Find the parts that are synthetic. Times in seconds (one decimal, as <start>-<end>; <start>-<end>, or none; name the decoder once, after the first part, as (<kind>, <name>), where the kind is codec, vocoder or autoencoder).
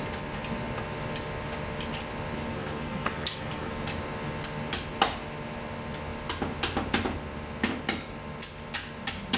2.5-3.7 (codec, SNAC)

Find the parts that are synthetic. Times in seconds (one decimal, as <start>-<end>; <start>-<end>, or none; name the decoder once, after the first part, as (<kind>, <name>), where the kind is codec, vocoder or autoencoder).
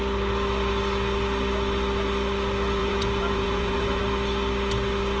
2.8-4.0 (vocoder, Vocos)